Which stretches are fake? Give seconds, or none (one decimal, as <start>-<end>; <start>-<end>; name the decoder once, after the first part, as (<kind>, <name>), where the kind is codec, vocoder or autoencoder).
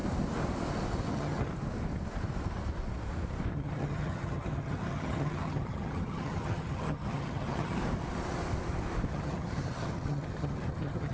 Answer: 1.1-1.5 (vocoder, HiFi-GAN); 3.5-7.8; 9.1-11.1